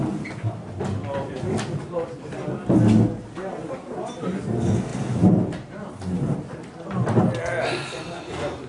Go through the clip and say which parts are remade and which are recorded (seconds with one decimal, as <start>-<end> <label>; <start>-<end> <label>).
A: 0.0-8.7 recorded